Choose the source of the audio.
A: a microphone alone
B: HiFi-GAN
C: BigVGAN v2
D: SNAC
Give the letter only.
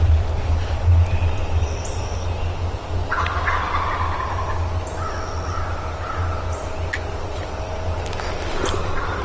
A